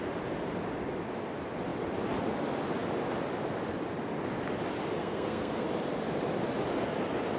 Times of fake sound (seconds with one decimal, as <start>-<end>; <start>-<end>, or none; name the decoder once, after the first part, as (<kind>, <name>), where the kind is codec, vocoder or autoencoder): 5.0-5.7 (codec, SNAC)